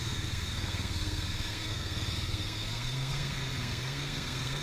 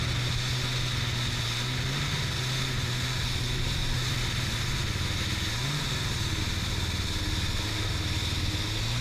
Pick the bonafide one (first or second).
second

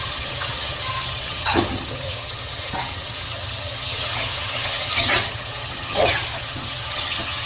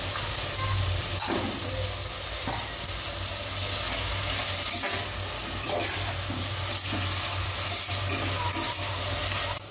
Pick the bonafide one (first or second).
second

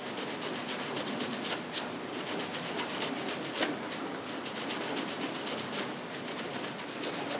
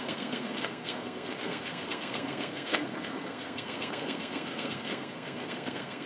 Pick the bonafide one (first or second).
first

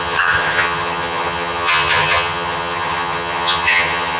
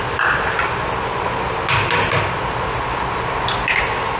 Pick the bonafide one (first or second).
second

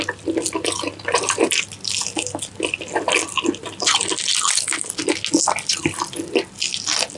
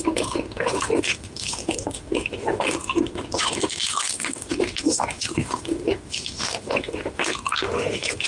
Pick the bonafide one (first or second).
first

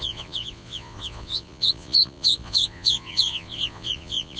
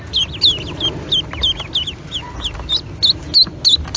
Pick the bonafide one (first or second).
second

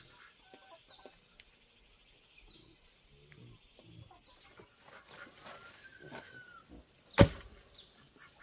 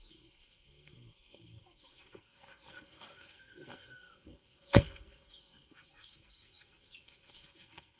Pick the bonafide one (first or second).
first